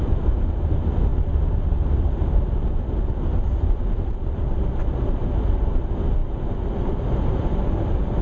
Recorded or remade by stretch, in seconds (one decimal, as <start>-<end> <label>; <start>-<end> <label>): 0.0-1.1 recorded; 1.1-4.8 remade; 4.8-8.2 recorded